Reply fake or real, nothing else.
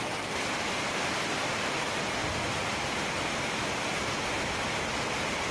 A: real